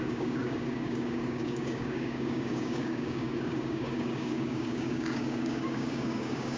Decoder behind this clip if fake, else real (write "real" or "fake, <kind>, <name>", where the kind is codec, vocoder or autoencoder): fake, codec, DAC